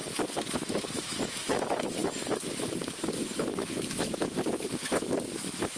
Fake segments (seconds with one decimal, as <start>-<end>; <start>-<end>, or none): 0.5-5.8